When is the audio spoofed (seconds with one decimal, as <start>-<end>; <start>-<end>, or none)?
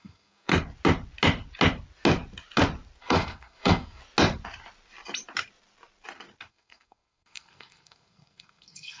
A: 0.0-0.5; 3.0-4.0; 6.5-9.0